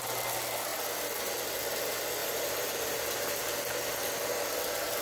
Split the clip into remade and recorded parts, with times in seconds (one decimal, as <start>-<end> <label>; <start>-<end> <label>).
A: 0.0-2.2 recorded; 2.2-3.4 remade; 3.4-5.0 recorded